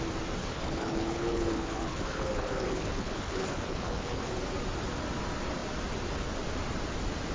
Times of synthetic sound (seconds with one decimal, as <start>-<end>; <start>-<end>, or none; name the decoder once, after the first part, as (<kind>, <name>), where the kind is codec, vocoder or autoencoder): 0.4-4.3 (codec, HILCodec)